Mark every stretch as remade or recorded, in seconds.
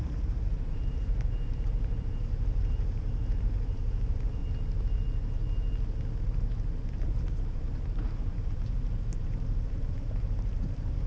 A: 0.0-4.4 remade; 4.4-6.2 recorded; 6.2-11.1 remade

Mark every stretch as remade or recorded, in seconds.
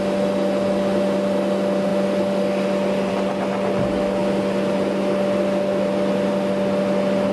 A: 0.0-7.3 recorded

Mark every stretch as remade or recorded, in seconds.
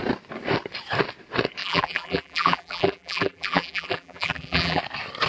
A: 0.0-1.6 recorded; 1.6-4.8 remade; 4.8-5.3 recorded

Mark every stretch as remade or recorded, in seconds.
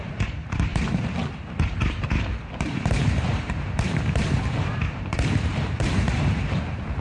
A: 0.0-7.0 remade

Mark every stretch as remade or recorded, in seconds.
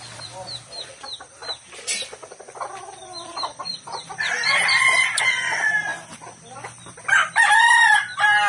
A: 0.0-1.4 remade; 1.4-2.8 recorded; 2.8-5.9 remade; 5.9-7.5 recorded; 7.5-8.5 remade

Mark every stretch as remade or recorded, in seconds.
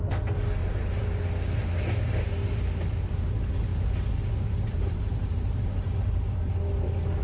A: 0.0-3.7 recorded; 3.7-6.6 remade; 6.6-7.2 recorded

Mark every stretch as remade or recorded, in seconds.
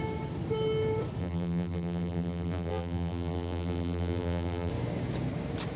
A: 0.0-1.2 recorded; 1.2-4.7 remade; 4.7-5.8 recorded